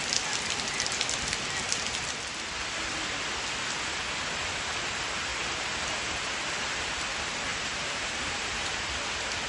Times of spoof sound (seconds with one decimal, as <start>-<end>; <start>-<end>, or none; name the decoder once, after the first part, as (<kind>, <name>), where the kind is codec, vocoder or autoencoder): 5.3-6.3 (vocoder, BigVGAN v2); 7.5-8.9